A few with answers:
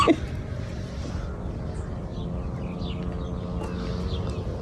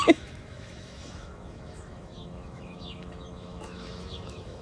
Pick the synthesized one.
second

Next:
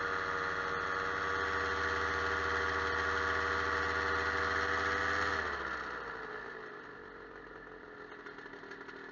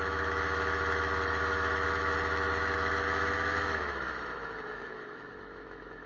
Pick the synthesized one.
second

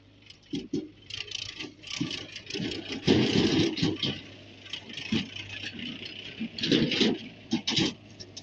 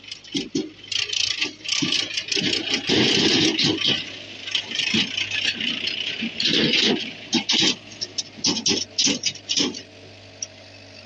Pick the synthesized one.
first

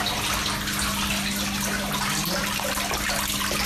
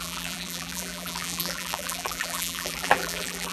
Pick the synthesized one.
second